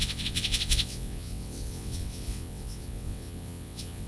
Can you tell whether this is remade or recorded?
remade